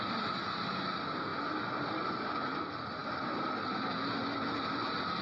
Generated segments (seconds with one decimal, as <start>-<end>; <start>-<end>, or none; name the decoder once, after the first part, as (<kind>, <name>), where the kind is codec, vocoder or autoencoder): none